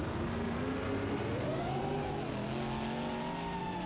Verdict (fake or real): real